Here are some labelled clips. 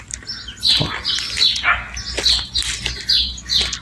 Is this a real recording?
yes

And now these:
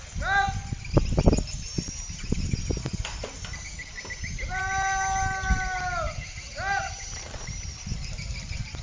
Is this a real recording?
yes